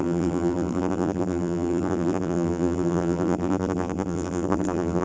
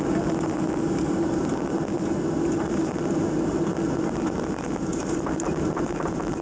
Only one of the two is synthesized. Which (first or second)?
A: first